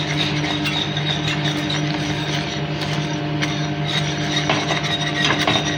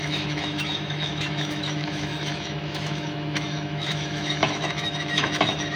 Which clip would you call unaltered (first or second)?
first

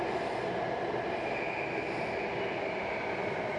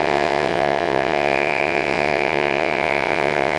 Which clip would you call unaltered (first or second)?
first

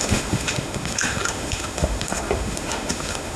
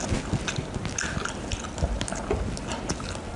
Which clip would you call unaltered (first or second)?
second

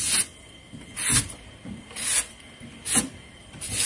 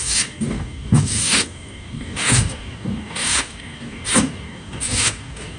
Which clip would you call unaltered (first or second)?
first